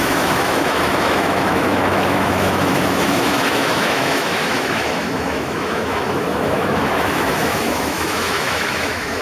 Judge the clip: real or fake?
fake